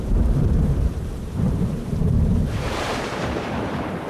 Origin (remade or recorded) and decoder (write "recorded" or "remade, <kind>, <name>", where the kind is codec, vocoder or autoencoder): remade, vocoder, BigVGAN v2